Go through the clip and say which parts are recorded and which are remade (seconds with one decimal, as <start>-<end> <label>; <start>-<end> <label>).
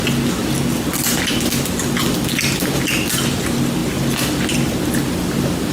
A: 0.0-5.7 recorded